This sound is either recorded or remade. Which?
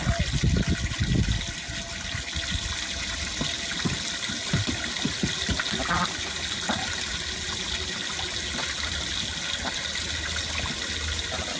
recorded